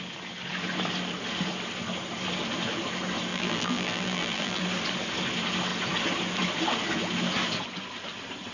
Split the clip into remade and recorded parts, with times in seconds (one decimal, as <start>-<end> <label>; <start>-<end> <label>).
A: 0.0-3.3 recorded; 3.3-4.6 remade; 4.6-8.5 recorded